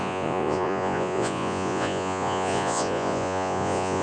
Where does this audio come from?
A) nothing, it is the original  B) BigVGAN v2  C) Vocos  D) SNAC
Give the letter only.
C